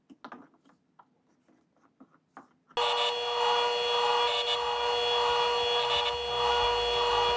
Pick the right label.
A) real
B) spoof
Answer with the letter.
A